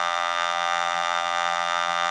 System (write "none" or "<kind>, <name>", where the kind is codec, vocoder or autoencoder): vocoder, BigVGAN v2